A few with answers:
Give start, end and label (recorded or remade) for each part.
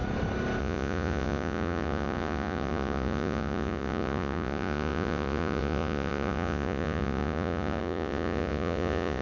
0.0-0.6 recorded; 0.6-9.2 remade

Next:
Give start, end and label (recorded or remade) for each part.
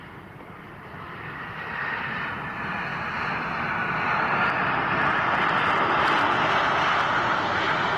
0.0-8.0 recorded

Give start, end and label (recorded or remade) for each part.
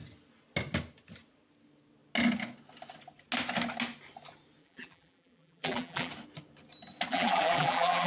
0.0-4.6 recorded; 4.6-6.1 remade; 6.1-7.1 recorded; 7.1-8.1 remade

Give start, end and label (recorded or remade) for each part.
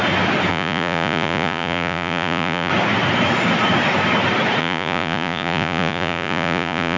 0.0-0.5 recorded; 0.5-2.7 remade; 2.7-4.6 recorded; 4.6-7.0 remade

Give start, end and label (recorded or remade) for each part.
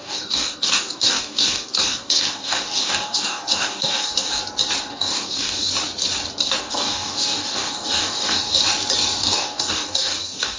0.0-4.4 remade; 4.4-4.9 recorded; 4.9-5.7 remade; 5.7-6.6 recorded; 6.6-8.6 remade; 8.6-9.2 recorded; 9.2-10.6 remade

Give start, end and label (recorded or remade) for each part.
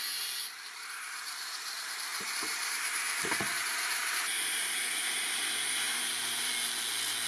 0.0-6.5 remade; 6.5-7.3 recorded